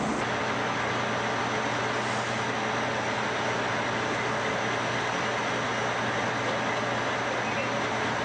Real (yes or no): yes